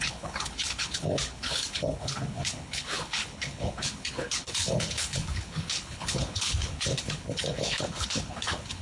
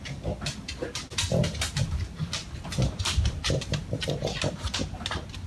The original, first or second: second